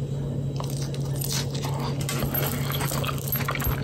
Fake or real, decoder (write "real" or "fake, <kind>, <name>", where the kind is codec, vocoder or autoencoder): real